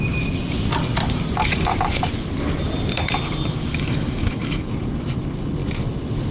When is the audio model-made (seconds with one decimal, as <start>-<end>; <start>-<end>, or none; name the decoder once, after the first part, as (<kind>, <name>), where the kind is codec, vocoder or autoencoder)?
3.6-4.7 (autoencoder, DAC-VAE)